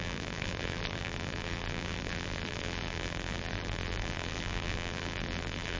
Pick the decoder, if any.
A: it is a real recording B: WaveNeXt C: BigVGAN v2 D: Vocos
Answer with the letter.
C